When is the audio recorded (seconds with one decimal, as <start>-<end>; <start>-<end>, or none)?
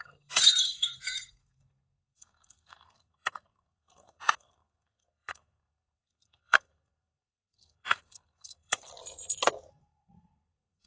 8.9-9.7